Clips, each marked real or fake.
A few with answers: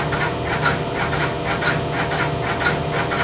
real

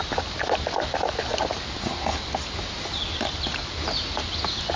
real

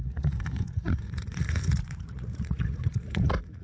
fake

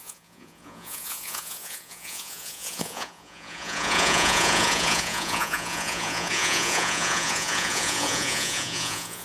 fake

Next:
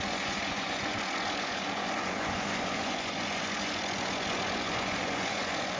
fake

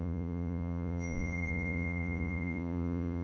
fake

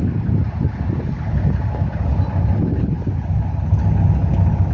real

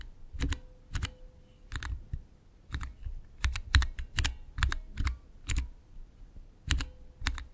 real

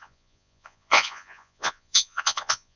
fake